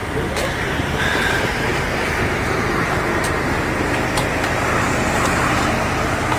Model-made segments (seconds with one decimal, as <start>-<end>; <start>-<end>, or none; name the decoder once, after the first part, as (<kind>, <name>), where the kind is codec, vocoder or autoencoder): 0.6-6.4 (vocoder, BigVGAN v2)